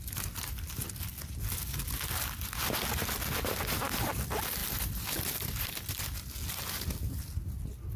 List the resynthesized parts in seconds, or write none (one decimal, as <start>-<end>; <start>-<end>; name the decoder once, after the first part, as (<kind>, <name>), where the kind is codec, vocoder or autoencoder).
4.6-5.7 (vocoder, BigVGAN v2)